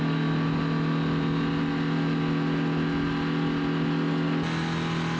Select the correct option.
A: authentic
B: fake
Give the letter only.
A